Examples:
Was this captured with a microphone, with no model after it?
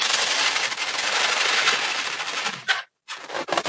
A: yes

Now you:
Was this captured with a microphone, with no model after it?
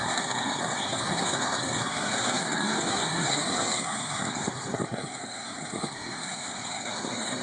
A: no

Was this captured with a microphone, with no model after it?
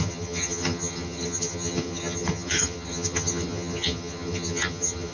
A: no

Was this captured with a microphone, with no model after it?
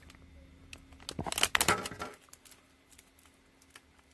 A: yes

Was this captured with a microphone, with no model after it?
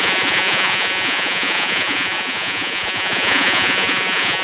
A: no